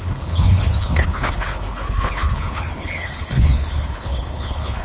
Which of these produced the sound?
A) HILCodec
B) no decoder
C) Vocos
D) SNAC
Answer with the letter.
A